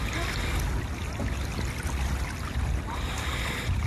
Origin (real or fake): real